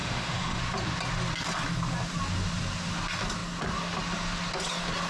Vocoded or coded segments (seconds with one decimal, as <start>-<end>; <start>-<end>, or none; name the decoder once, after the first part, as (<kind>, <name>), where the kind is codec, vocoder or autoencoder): 0.0-0.6 (autoencoder, DAC-VAE)